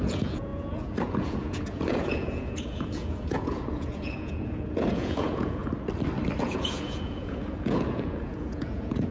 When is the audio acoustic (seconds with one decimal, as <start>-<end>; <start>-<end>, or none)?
5.6-6.4

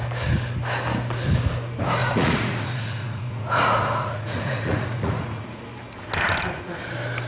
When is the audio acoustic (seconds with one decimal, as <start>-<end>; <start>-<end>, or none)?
0.0-2.0; 5.6-7.3